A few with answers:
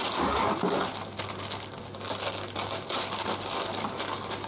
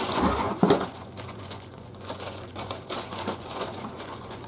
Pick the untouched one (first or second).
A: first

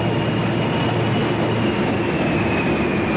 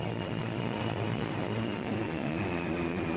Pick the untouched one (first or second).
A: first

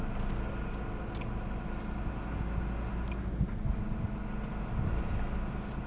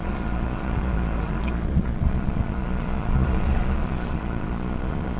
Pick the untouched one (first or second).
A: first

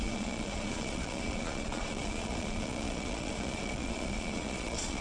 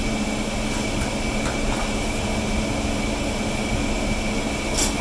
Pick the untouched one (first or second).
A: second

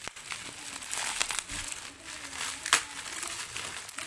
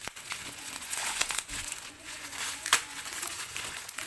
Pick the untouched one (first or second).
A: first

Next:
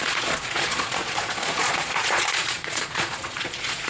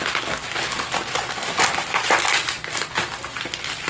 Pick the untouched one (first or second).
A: second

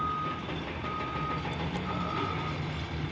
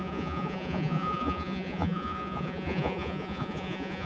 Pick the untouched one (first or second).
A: first